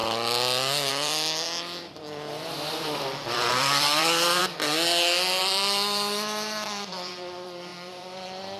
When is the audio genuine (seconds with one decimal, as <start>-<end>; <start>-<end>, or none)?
0.0-0.9; 4.4-5.4